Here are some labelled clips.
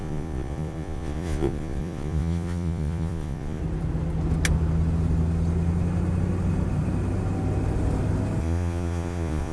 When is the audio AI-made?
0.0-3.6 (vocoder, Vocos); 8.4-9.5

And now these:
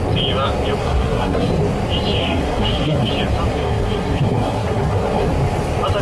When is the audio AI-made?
0.8-1.5 (codec, SNAC); 2.2-3.1; 3.5-5.3

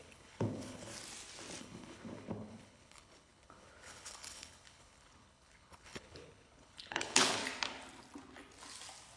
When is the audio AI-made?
0.0-0.9 (codec, HILCodec); 1.6-7.4

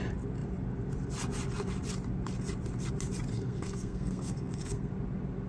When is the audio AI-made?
3.3-4.9 (codec, SNAC)

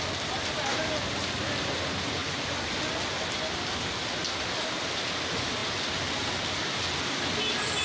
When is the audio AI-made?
none

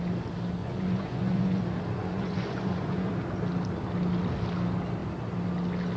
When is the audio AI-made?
0.6-1.6 (vocoder, Vocos); 2.0-3.1

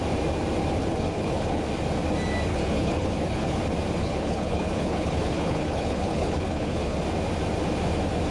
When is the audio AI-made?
0.8-1.6 (codec, HILCodec); 2.5-3.6; 4.0-7.0